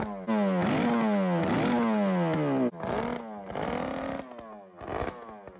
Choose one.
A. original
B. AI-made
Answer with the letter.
A